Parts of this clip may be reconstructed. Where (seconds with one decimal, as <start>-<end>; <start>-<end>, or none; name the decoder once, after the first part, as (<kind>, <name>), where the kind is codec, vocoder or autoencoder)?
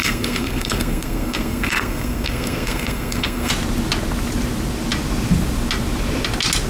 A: 0.0-3.5 (codec, SNAC)